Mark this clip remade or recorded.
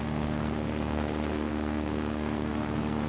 remade